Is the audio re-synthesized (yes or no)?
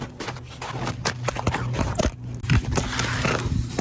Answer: no